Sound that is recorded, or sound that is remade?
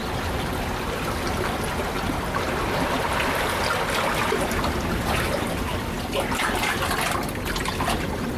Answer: recorded